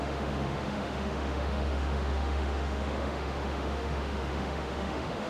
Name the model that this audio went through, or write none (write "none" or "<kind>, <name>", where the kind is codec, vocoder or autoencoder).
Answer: autoencoder, DAC-VAE